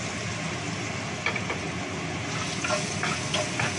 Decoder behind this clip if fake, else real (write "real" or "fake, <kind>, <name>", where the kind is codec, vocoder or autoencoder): real